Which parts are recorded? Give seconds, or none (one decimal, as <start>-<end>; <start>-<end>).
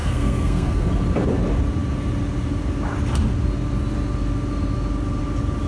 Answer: 0.9-5.7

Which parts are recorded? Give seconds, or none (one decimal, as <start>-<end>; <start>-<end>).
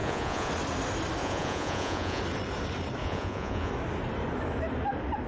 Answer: 0.5-1.2; 2.2-3.0; 3.7-5.3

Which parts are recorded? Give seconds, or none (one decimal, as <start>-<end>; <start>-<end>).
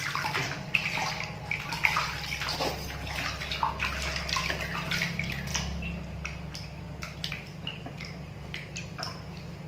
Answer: 0.0-9.7